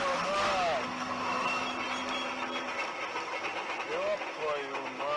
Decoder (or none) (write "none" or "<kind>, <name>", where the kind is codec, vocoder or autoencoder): none